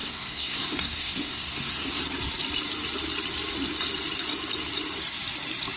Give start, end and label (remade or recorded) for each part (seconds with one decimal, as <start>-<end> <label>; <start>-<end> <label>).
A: 0.0-2.0 remade; 2.0-5.8 recorded